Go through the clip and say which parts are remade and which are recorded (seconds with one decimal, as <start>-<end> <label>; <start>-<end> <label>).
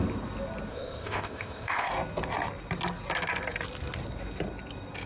0.0-0.7 recorded; 0.7-1.9 remade; 1.9-5.1 recorded